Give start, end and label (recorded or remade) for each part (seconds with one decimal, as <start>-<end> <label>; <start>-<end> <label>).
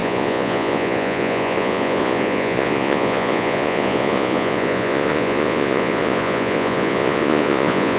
0.0-8.0 remade